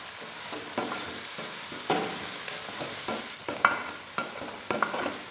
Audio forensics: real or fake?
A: fake